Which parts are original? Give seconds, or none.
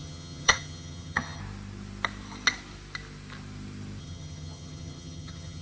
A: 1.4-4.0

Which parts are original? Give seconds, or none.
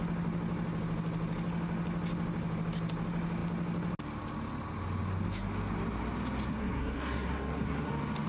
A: 0.0-6.5; 7.9-8.3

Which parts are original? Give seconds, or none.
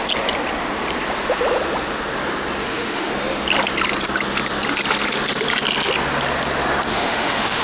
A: 0.0-2.6; 3.1-6.9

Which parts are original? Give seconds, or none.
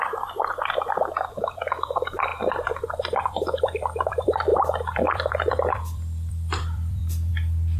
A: none